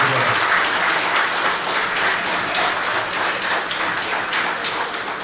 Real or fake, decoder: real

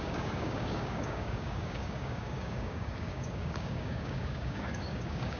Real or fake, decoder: fake, codec, DAC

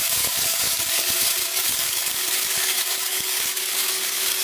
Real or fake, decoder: fake, codec, DAC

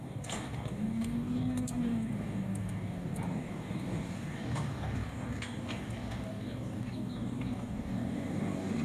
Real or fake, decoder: fake, codec, DAC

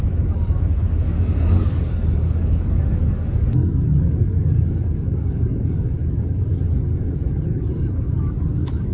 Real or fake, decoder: fake, codec, DAC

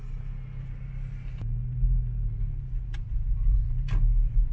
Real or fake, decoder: real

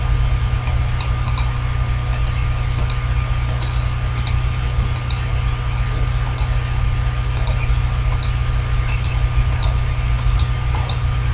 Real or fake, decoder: real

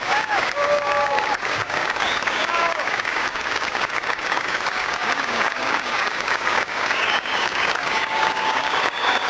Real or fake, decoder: fake, codec, DAC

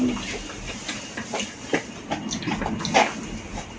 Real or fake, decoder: real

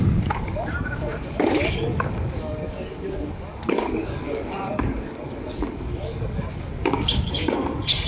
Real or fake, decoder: fake, codec, DAC